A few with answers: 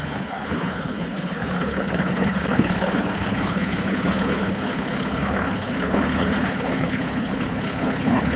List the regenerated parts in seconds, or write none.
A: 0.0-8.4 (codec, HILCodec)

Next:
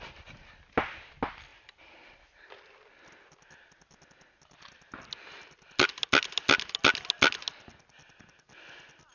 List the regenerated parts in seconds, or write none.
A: none

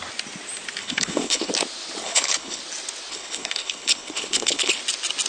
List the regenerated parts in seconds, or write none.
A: 0.8-1.5 (codec, HILCodec); 2.0-2.6; 3.1-4.8

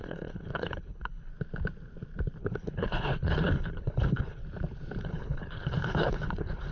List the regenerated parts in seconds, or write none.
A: 0.0-1.3 (codec, HILCodec); 2.4-4.4; 5.0-6.7

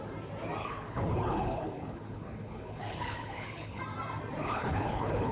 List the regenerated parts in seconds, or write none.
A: 0.6-3.8 (codec, HILCodec); 4.4-5.3